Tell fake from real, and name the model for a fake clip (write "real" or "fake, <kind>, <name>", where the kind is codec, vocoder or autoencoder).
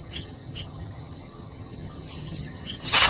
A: fake, vocoder, HiFi-GAN